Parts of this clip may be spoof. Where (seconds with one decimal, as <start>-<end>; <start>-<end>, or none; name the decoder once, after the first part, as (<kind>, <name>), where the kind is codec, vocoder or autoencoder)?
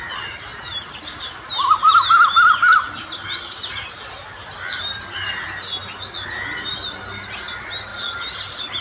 0.5-3.0 (vocoder, BigVGAN v2); 4.7-5.3; 7.9-8.8